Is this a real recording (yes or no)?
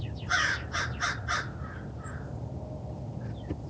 yes